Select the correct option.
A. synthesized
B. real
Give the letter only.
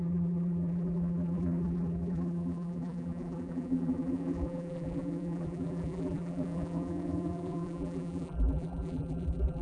A